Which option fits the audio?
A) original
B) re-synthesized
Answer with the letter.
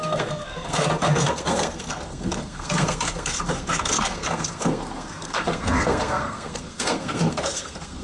B